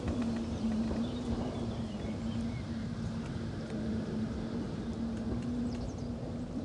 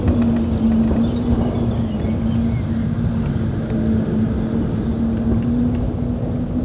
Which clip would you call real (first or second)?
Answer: second